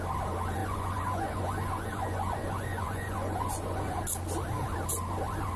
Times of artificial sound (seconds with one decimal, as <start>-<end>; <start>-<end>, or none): 0.6-4.0